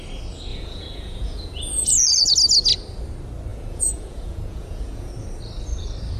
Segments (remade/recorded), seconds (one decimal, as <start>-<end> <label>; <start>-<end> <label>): 0.0-0.5 recorded; 0.5-2.3 remade; 2.3-3.5 recorded; 3.5-5.1 remade; 5.1-6.2 recorded